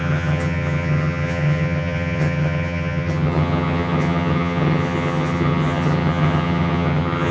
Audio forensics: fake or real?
fake